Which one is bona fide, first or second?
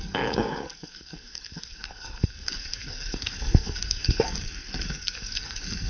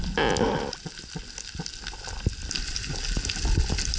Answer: second